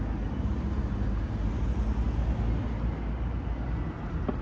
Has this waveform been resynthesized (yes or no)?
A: no